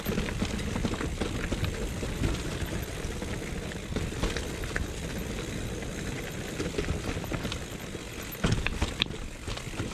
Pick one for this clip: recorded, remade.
recorded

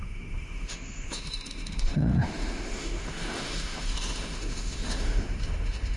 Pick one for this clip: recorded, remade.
remade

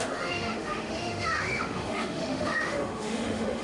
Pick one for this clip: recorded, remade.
remade